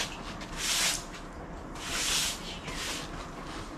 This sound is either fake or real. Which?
real